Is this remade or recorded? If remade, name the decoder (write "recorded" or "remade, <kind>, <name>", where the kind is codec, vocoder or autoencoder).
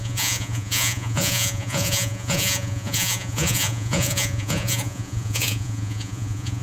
remade, vocoder, Vocos